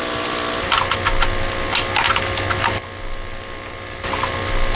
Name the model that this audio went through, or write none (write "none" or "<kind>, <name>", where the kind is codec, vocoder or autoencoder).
none